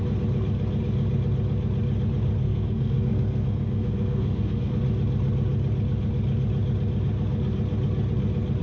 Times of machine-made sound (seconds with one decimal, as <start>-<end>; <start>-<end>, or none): 2.4-4.7